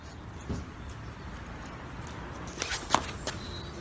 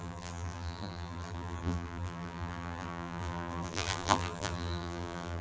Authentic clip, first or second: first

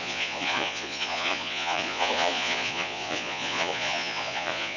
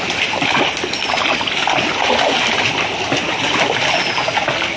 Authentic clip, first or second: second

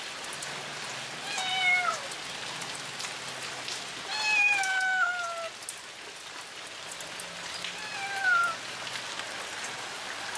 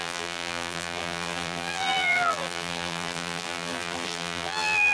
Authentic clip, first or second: first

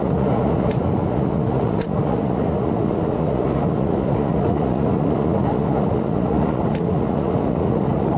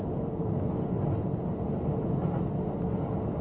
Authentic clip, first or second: second